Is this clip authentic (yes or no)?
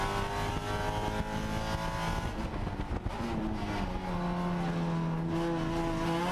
yes